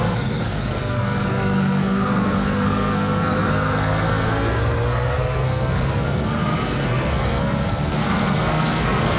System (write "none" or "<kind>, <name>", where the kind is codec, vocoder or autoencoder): codec, SNAC